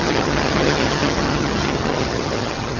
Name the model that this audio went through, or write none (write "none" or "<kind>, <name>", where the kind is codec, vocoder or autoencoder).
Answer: vocoder, HiFi-GAN